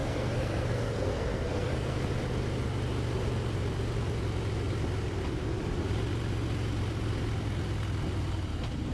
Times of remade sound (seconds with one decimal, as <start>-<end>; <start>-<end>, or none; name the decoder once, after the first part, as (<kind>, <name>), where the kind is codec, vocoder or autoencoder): 0.0-2.0 (codec, SNAC)

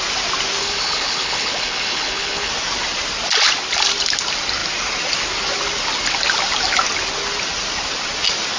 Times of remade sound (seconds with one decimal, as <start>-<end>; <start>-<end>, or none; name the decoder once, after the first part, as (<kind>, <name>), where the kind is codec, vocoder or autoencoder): 0.6-2.5 (codec, HILCodec)

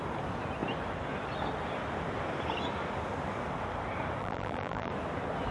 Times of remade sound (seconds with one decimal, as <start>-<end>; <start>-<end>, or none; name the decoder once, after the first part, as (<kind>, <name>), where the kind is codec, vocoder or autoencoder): 4.2-4.9 (vocoder, BigVGAN v2)

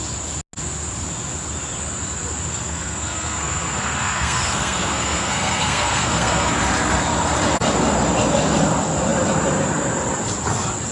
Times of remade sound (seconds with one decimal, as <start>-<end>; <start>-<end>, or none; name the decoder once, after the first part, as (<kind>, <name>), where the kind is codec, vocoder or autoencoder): 2.5-6.5 (codec, SNAC)

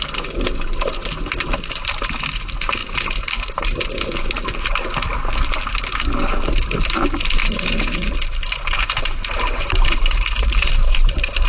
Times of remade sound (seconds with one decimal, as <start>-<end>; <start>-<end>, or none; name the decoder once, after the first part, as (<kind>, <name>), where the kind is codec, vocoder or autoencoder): 2.8-3.8 (vocoder, BigVGAN v2); 7.4-11.5

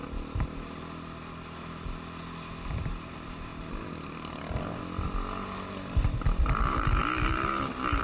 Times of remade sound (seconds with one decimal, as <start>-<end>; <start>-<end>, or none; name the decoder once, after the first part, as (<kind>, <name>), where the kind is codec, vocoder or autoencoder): 2.7-3.5 (vocoder, BigVGAN v2); 6.4-8.0